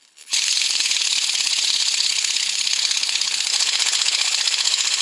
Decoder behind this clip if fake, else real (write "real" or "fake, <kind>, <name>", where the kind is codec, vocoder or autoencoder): fake, codec, HILCodec